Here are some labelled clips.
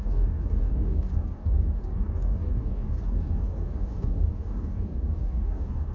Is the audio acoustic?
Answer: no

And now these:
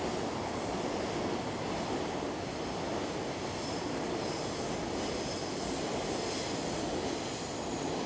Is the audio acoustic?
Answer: yes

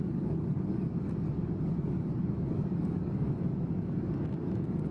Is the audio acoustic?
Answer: no